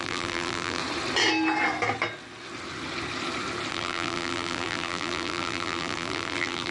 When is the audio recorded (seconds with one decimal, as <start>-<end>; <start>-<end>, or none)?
0.8-3.7